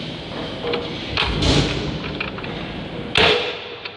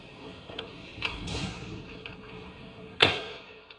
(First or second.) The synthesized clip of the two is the second